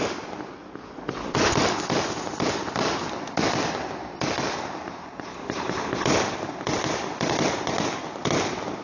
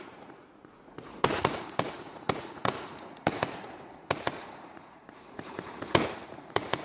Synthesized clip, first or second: second